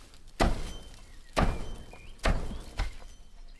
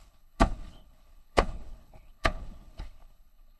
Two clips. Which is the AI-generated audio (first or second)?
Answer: second